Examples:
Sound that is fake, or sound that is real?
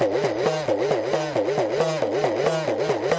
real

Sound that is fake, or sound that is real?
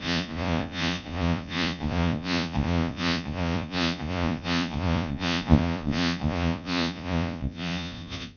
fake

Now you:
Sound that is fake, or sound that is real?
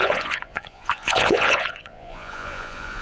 fake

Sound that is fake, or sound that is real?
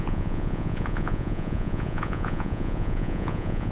fake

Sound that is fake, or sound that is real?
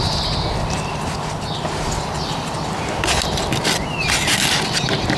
real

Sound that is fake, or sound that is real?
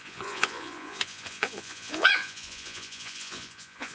fake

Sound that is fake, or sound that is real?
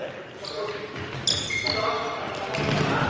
real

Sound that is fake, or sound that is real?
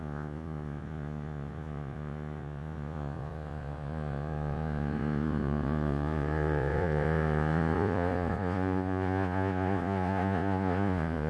fake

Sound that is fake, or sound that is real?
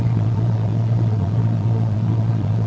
fake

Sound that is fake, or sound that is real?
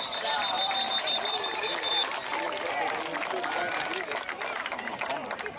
real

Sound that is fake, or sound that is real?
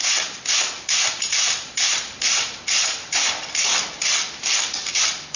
real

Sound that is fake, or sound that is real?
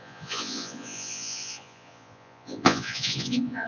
fake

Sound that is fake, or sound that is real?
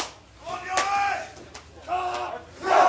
real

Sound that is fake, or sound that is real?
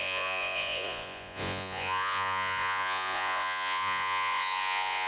fake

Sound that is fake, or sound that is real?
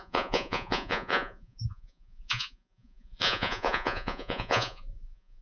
fake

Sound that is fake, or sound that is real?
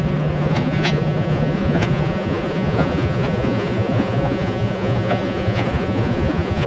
fake